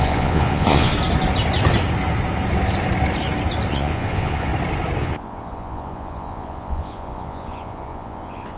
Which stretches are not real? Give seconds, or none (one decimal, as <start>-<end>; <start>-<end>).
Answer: 0.0-0.9; 3.7-4.5; 5.0-8.6